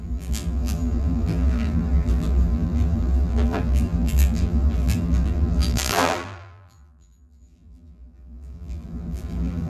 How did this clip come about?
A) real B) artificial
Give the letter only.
B